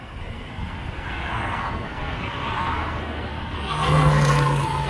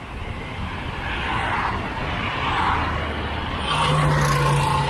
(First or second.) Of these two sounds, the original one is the second